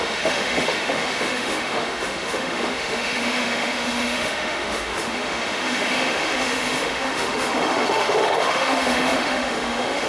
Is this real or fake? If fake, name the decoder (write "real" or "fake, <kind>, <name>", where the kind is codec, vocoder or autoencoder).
fake, autoencoder, DAC-VAE